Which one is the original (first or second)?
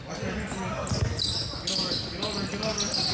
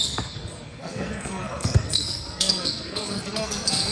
first